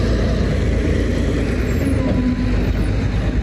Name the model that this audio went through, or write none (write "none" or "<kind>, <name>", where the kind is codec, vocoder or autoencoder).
none